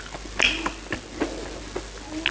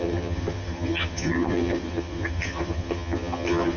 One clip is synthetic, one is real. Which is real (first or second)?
first